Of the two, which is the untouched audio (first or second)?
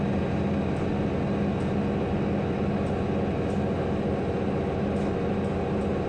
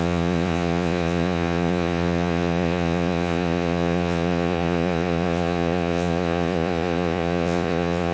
first